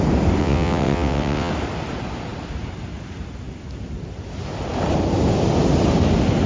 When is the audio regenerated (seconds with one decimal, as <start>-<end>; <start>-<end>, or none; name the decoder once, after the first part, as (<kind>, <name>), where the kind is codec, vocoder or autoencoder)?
0.4-1.5 (vocoder, WaveNeXt)